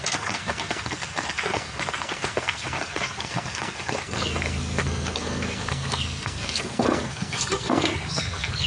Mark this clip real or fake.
fake